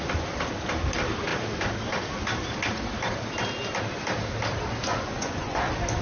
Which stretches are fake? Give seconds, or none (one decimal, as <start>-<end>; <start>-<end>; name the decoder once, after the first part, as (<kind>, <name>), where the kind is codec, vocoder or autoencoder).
4.9-5.6 (vocoder, Vocos)